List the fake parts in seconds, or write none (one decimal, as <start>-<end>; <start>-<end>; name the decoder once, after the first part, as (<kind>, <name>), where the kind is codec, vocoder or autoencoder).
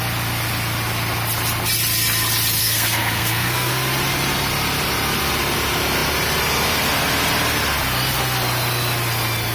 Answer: 2.6-3.7 (codec, SNAC)